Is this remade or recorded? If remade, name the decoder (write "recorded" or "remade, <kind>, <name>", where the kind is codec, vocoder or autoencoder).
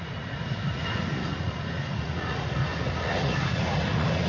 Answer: remade, vocoder, Vocos